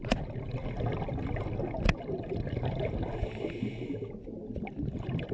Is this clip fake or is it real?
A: real